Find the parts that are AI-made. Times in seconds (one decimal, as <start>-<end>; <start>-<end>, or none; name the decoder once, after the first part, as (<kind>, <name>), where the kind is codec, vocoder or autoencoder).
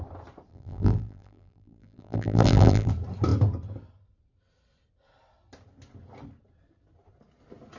0.5-2.9 (vocoder, BigVGAN v2)